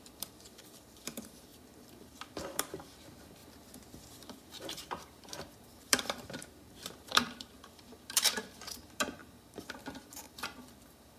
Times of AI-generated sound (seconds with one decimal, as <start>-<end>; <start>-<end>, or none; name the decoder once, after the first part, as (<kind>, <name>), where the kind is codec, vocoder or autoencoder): 0.0-3.4 (vocoder, BigVGAN v2); 4.3-11.2